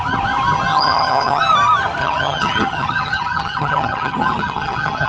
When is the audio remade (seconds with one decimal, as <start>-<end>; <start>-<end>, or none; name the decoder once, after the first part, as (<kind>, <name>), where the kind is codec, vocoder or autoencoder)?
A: 0.7-1.4 (vocoder, HiFi-GAN); 2.0-5.1